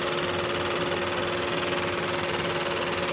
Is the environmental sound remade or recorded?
recorded